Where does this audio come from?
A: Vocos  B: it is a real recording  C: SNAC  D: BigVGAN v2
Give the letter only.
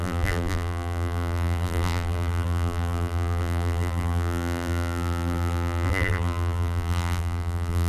D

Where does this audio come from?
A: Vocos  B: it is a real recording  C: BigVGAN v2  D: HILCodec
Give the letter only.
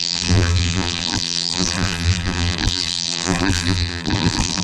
C